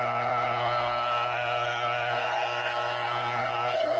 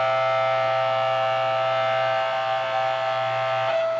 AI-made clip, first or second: first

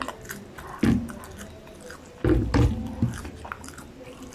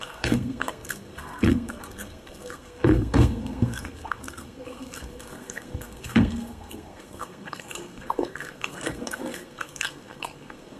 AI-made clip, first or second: second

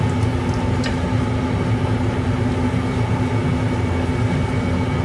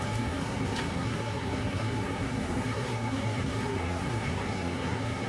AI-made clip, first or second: second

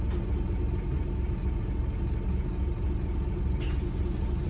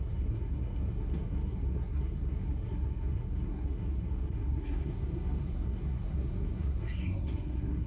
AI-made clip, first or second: second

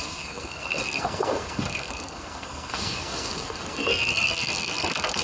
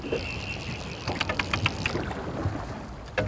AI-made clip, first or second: first